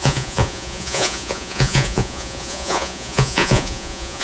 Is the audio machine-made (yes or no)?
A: yes